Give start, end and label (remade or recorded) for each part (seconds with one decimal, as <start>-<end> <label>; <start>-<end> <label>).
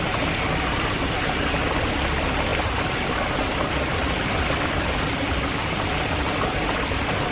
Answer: 0.0-7.3 recorded